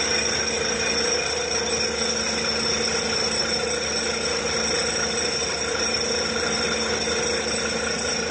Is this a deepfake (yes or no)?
no